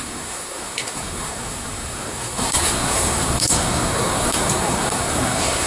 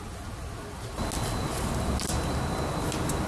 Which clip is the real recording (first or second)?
second